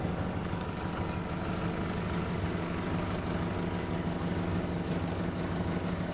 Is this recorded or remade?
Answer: remade